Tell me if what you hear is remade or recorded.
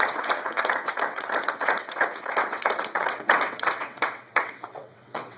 remade